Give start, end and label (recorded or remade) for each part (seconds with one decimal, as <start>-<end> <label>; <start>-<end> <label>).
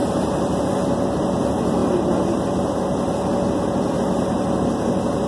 0.0-5.3 recorded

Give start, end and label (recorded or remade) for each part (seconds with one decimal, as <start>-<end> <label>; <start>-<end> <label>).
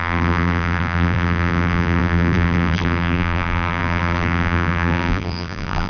0.0-5.9 remade